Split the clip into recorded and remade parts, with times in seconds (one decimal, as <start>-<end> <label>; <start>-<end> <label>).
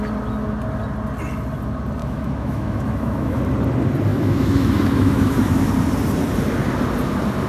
0.0-2.0 recorded; 2.0-3.4 remade; 3.4-4.1 recorded; 4.1-5.7 remade; 5.7-7.5 recorded